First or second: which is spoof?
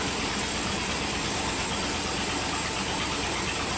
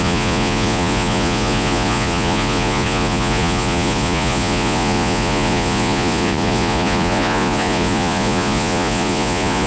second